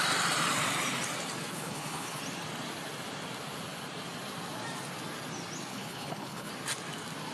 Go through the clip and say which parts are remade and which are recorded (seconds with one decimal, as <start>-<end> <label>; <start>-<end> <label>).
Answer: 0.0-1.5 recorded; 1.5-2.2 remade; 2.2-5.7 recorded; 5.7-6.5 remade; 6.5-7.3 recorded